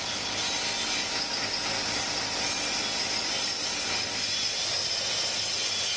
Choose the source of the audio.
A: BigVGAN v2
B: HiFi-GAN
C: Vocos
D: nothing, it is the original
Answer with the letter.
D